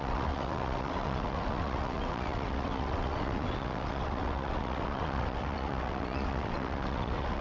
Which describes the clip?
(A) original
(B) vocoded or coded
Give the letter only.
B